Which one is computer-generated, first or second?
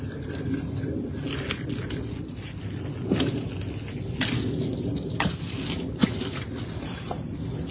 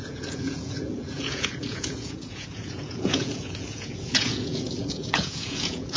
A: second